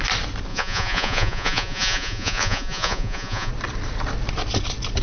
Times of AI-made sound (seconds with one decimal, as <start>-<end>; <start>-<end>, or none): 0.5-3.5